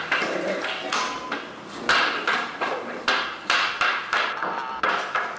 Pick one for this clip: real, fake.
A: real